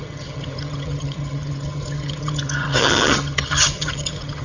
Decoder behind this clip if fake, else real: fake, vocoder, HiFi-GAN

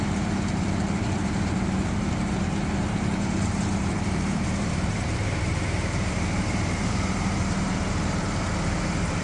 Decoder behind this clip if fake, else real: fake, vocoder, BigVGAN v2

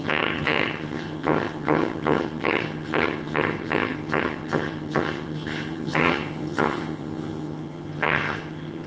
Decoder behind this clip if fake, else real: fake, vocoder, HiFi-GAN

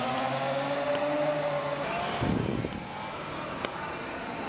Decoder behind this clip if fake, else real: real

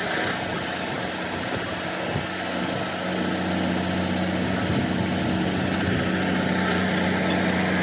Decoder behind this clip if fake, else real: real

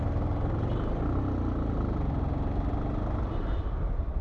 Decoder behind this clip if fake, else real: real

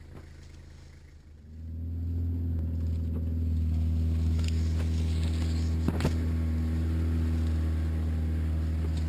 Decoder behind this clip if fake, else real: real